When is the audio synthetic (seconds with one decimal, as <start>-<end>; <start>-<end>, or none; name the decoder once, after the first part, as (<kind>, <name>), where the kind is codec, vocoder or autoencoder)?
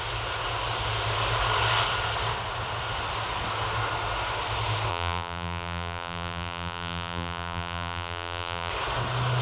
4.9-8.7 (vocoder, BigVGAN v2)